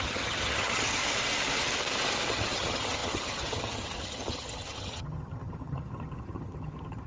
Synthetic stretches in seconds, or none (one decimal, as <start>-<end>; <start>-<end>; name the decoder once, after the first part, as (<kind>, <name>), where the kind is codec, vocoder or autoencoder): 0.0-1.0 (vocoder, HiFi-GAN); 2.3-7.1